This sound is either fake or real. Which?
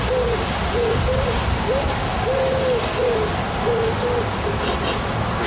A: real